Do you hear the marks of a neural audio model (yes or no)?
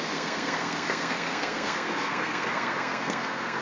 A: yes